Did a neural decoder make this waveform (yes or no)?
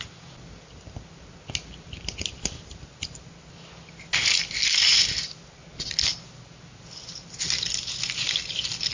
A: no